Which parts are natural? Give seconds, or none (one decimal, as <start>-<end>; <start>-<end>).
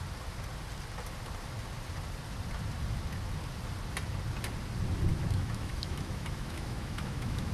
0.0-5.1